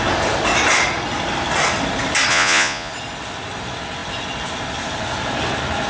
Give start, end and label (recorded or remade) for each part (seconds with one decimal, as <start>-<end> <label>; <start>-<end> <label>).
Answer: 0.0-2.3 recorded; 2.3-2.9 remade; 2.9-5.9 recorded

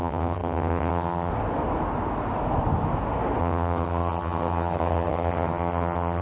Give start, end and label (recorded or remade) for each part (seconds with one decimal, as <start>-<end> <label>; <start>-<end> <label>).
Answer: 0.0-1.3 remade; 1.3-3.4 recorded; 3.4-6.2 remade

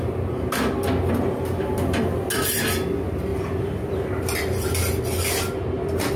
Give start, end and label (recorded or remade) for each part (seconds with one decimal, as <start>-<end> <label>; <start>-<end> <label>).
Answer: 0.0-3.3 recorded; 3.3-4.8 remade; 4.8-6.2 recorded

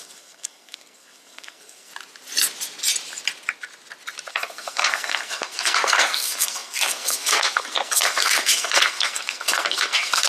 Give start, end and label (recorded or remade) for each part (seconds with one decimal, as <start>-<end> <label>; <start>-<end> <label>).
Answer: 0.0-1.9 remade; 1.9-4.3 recorded; 4.3-10.3 remade

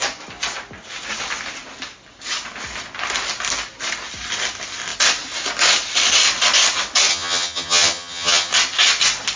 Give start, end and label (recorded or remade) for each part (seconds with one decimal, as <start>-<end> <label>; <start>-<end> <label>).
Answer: 0.0-7.1 recorded; 7.1-8.5 remade; 8.5-9.4 recorded